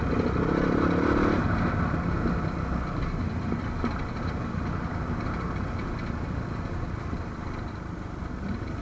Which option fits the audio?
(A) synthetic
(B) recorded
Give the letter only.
B